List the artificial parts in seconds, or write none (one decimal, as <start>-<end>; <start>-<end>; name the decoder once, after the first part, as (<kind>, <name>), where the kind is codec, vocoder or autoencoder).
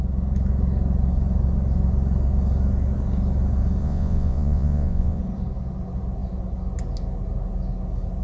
3.8-5.2 (vocoder, Vocos)